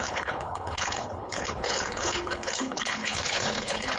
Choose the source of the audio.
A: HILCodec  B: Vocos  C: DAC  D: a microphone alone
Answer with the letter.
A